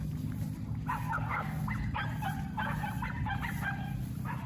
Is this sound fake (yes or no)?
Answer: no